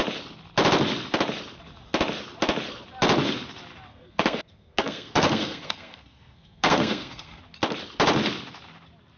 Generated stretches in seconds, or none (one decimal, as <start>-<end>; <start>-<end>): 3.9-7.4